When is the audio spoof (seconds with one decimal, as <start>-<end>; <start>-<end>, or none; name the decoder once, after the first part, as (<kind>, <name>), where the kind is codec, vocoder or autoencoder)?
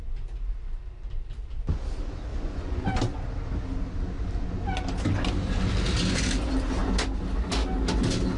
2.3-2.9 (vocoder, Vocos)